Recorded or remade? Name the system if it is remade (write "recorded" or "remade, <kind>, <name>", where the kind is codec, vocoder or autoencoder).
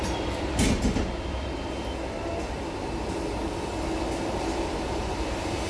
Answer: recorded